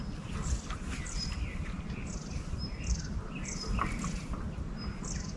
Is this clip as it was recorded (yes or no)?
yes